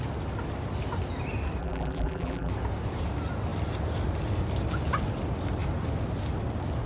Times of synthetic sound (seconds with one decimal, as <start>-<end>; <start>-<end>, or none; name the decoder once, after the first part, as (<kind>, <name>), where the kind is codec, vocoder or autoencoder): 1.6-2.5 (vocoder, BigVGAN v2)